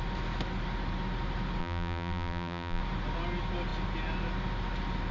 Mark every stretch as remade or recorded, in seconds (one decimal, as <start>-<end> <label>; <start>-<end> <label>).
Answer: 0.0-1.6 recorded; 1.6-2.8 remade; 2.8-5.1 recorded